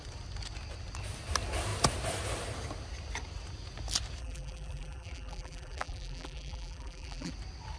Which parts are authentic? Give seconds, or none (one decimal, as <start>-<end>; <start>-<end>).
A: 0.0-4.2; 7.3-7.8